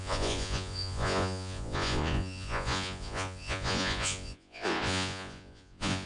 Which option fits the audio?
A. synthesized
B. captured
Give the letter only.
A